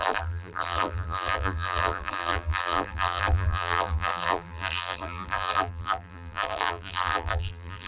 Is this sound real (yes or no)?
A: no